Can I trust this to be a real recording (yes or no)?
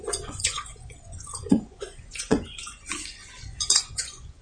no